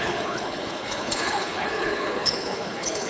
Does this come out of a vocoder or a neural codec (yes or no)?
yes